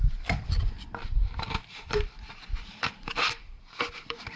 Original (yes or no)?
no